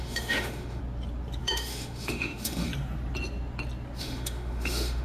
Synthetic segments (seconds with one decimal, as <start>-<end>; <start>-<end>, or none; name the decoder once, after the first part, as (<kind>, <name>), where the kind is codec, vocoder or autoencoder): 0.0-0.8 (autoencoder, DAC-VAE); 1.4-2.7; 4.0-5.0